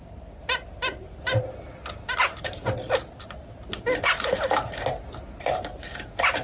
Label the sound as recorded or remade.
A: recorded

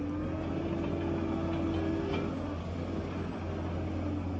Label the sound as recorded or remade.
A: recorded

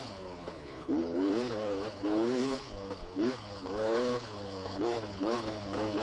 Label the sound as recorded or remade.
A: remade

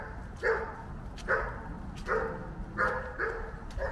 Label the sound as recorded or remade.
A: recorded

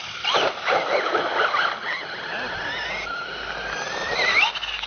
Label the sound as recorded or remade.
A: recorded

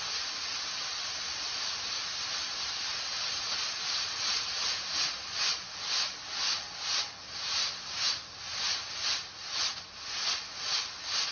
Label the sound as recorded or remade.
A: recorded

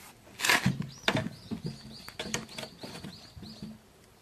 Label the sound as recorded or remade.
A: recorded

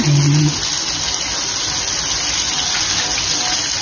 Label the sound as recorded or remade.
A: recorded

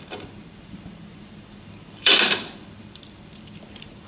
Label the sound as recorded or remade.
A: remade